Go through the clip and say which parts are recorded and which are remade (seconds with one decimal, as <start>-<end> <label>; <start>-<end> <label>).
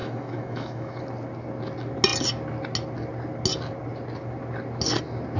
0.0-1.0 remade; 1.0-5.4 recorded